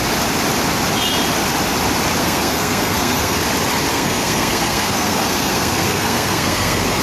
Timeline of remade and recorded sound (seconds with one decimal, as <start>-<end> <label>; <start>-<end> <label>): 0.0-2.2 recorded; 2.2-3.4 remade; 3.4-3.9 recorded; 3.9-7.0 remade